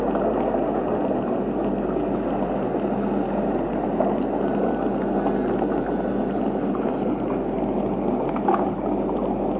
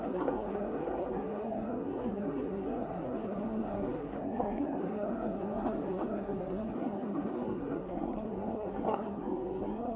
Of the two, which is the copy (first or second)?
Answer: second